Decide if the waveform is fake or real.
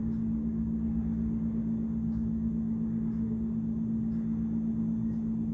real